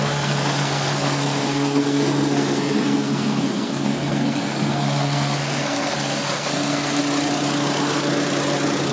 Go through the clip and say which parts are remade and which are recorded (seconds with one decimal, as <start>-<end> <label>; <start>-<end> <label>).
0.0-7.0 remade; 7.0-8.9 recorded